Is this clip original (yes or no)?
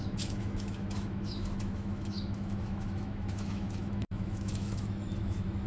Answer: no